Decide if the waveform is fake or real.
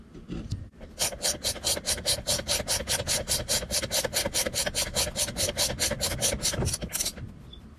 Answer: real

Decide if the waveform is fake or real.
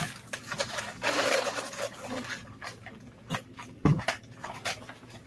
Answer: fake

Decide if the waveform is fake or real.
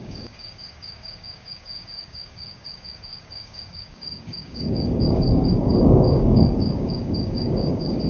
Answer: fake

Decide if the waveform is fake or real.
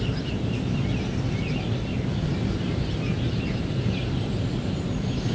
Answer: real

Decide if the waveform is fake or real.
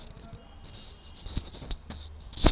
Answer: real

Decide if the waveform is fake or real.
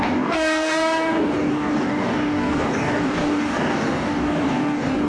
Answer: fake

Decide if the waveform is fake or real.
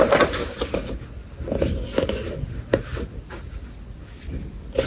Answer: real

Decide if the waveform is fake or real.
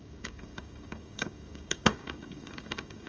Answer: fake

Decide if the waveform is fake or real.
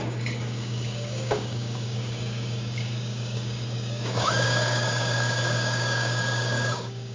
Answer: fake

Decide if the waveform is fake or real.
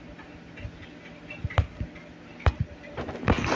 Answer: real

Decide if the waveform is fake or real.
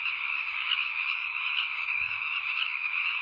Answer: fake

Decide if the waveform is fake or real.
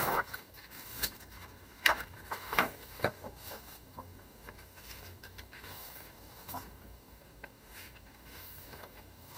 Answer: fake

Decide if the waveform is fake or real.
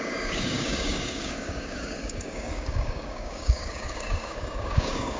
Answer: fake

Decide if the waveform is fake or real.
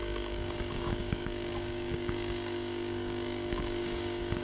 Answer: fake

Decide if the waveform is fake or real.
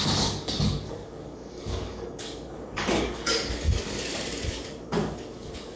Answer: fake